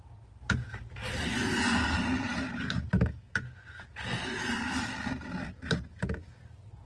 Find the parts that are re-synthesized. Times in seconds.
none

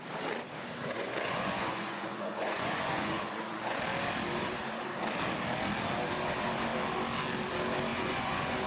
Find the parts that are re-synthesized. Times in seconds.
0.8-3.8; 7.9-8.7

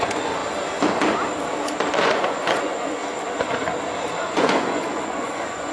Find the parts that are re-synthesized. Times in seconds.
0.0-0.4; 1.9-3.0; 4.2-5.7